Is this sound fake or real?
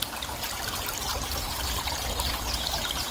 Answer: fake